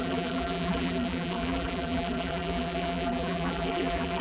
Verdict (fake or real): fake